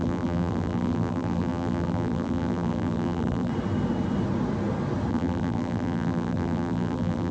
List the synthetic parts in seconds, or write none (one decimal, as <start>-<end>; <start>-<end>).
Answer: 0.0-3.5; 5.1-7.3